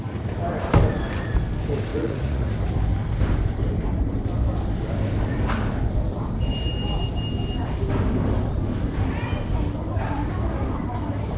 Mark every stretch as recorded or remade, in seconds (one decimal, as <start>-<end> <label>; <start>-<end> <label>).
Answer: 0.0-1.9 recorded; 1.9-2.5 remade; 2.5-11.4 recorded